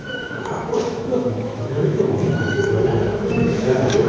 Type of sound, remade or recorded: remade